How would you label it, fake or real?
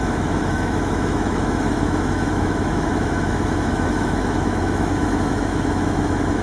fake